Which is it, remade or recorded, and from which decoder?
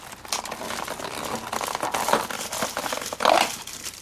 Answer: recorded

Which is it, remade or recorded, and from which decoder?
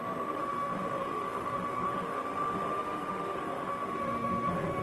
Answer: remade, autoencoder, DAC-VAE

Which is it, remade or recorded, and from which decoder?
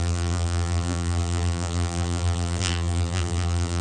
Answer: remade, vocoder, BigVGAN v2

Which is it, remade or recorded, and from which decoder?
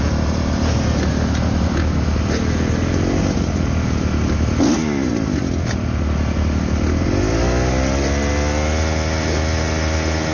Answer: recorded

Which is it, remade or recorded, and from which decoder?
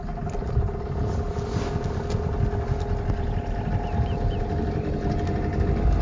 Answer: recorded